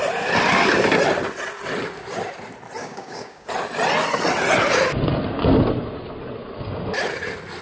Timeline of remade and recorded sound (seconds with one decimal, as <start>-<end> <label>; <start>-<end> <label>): 0.0-2.8 recorded; 2.8-3.5 remade; 3.5-7.6 recorded